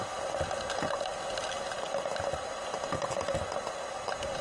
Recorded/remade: recorded